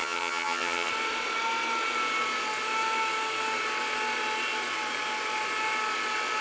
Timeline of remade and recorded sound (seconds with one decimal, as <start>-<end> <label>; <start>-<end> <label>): 0.0-0.9 remade; 0.9-6.4 recorded